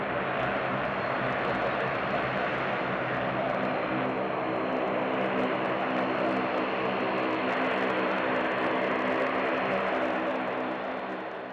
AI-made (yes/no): no